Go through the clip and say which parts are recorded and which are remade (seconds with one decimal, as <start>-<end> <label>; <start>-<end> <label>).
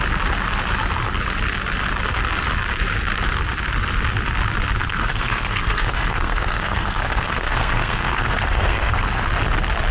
0.0-4.8 recorded; 4.8-9.2 remade; 9.2-9.9 recorded